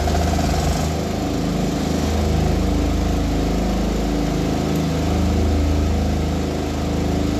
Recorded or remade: recorded